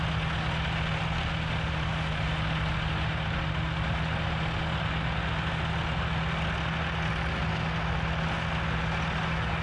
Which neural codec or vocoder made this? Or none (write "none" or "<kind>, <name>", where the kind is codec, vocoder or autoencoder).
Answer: none